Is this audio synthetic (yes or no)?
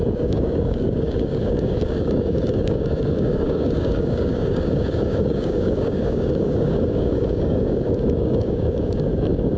yes